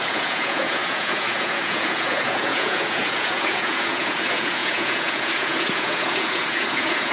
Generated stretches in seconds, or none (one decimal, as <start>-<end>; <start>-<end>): 0.0-7.1

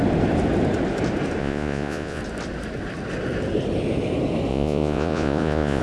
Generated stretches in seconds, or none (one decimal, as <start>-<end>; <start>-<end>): 1.4-2.2; 4.5-5.8

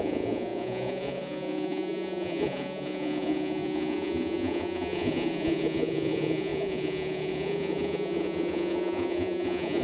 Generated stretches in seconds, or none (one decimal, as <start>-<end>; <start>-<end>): 0.0-9.8

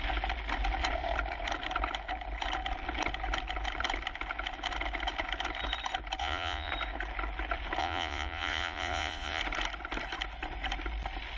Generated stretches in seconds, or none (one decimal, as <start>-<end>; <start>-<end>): 6.2-6.7; 7.8-9.4

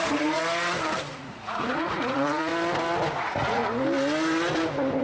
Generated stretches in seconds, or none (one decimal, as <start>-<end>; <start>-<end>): 0.0-0.4; 1.1-2.5; 3.2-3.6

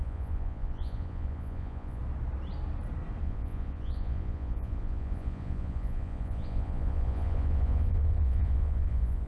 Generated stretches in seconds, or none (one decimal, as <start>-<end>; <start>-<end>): 0.0-2.0; 3.2-9.3